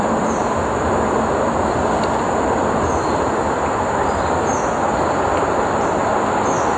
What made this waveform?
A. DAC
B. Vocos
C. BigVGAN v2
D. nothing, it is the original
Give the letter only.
C